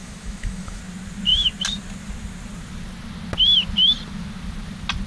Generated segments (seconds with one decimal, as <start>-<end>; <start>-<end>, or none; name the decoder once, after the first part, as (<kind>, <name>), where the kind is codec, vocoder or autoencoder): 0.0-0.8 (autoencoder, DAC-VAE)